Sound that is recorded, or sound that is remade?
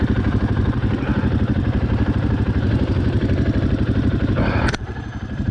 remade